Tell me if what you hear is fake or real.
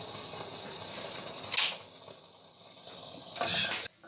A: real